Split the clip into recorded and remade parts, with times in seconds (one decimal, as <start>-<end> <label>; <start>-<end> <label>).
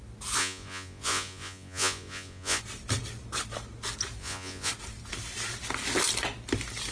0.0-0.4 recorded; 0.4-2.6 remade; 2.6-4.2 recorded; 4.2-4.7 remade; 4.7-6.9 recorded